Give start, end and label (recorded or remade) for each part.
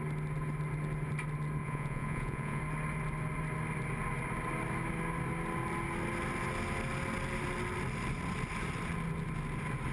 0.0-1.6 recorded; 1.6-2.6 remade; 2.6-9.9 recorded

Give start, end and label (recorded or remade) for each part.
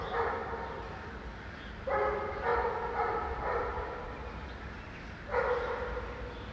0.0-0.4 recorded; 0.4-1.0 remade; 1.0-6.5 recorded